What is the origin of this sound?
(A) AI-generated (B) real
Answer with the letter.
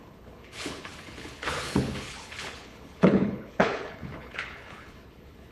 A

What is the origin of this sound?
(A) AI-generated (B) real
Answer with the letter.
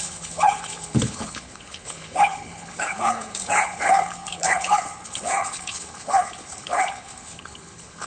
A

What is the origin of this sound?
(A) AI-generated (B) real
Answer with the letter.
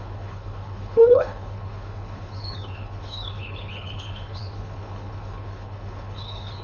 A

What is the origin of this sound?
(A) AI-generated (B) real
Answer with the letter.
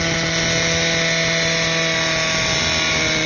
B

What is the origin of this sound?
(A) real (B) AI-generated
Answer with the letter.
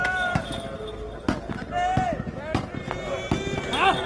A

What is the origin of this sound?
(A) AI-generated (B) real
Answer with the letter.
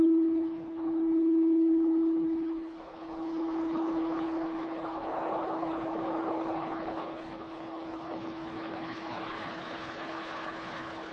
A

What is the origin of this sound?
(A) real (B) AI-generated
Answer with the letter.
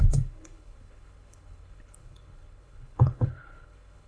B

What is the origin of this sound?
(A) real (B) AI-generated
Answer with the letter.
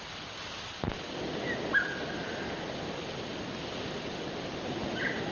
A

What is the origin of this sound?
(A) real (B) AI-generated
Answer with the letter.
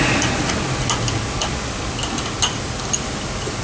A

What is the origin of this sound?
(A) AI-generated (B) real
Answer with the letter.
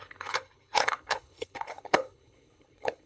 A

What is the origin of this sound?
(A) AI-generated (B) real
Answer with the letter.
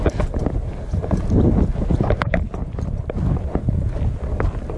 B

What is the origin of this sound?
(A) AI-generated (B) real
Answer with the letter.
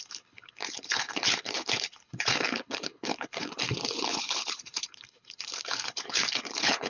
A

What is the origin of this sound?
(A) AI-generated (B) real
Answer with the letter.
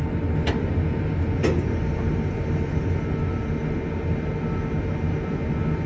B